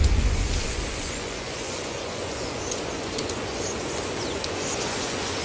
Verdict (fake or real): fake